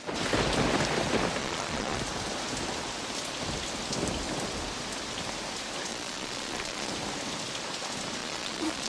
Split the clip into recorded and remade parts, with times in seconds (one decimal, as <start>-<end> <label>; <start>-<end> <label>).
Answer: 0.0-1.4 recorded; 1.4-2.0 remade; 2.0-5.9 recorded; 5.9-6.9 remade; 6.9-8.2 recorded; 8.2-8.9 remade